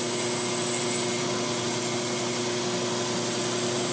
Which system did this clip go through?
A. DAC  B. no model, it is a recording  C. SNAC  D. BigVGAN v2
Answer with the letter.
B